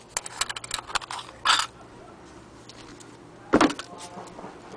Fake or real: real